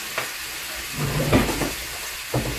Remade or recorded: recorded